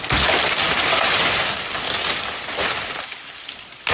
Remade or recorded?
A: recorded